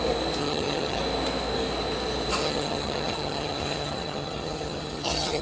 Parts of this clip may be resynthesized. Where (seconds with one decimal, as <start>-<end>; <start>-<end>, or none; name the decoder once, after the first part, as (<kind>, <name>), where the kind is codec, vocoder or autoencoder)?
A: 0.4-1.0 (vocoder, HiFi-GAN); 2.4-5.4